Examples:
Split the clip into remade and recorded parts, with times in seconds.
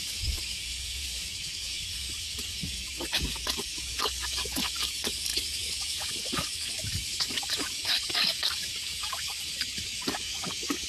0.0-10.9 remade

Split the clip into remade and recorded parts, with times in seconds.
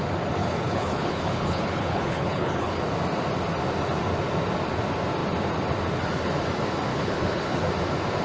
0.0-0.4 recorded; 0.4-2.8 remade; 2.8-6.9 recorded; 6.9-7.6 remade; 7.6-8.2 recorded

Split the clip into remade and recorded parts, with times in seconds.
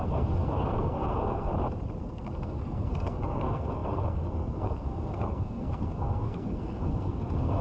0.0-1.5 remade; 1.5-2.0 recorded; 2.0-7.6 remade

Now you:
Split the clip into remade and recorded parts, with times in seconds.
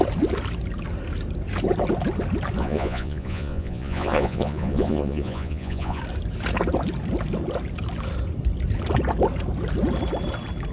0.0-2.6 recorded; 2.6-6.0 remade; 6.0-10.7 recorded